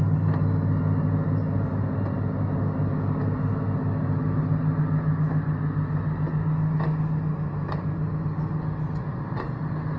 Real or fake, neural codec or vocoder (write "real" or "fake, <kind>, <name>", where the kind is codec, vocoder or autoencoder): real